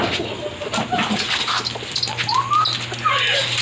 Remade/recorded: recorded